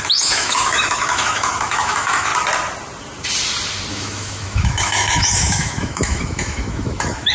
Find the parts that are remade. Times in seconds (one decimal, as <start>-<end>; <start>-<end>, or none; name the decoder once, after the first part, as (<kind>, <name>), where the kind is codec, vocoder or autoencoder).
0.0-2.3 (autoencoder, DAC-VAE); 3.9-7.3